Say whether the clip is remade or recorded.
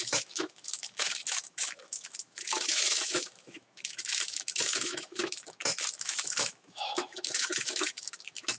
remade